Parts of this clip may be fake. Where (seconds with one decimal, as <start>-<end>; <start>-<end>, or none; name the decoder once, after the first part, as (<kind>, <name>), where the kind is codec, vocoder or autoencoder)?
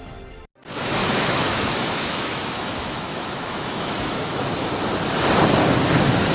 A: 1.0-4.4 (autoencoder, DAC-VAE)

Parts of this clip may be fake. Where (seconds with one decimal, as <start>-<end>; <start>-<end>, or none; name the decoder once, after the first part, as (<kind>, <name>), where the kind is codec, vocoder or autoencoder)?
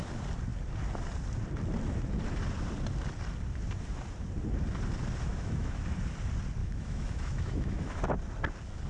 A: 5.3-5.8 (autoencoder, DAC-VAE); 6.6-8.0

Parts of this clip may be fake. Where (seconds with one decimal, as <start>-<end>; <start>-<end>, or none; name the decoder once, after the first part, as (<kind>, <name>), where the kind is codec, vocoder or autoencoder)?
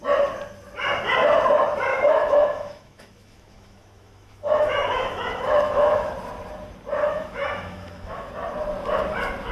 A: 1.9-6.1 (autoencoder, DAC-VAE); 7.0-8.3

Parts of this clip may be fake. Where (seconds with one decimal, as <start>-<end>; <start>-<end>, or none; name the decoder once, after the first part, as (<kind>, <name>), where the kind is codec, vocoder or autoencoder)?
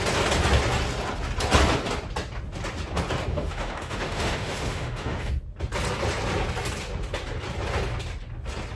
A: 3.3-5.3 (autoencoder, DAC-VAE)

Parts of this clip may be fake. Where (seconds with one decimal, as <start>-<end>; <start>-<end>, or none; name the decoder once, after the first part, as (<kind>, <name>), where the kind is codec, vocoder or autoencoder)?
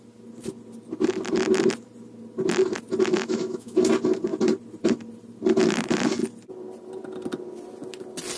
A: 3.1-3.8 (autoencoder, DAC-VAE)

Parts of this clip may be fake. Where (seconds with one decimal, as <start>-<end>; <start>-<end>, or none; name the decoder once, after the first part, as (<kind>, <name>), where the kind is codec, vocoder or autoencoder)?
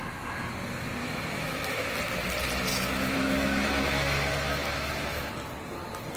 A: 1.0-1.9 (autoencoder, DAC-VAE); 2.7-5.3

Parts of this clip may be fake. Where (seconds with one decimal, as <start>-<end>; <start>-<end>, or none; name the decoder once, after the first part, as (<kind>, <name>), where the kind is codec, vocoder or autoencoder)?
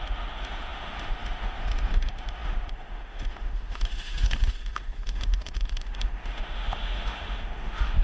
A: 0.0-8.0 (autoencoder, DAC-VAE)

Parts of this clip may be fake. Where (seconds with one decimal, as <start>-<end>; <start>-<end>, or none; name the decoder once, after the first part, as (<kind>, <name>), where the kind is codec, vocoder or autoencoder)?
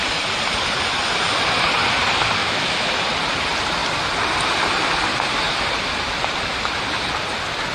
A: 2.4-2.9 (autoencoder, DAC-VAE)